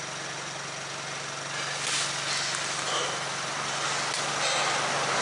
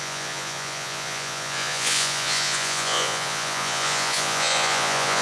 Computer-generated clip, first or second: second